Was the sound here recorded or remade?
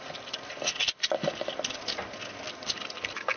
recorded